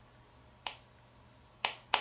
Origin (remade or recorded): recorded